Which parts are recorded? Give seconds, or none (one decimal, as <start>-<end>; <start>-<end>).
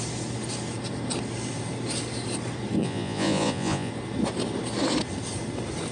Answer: 0.0-2.8; 3.9-5.9